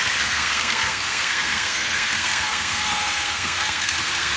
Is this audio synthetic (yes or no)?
yes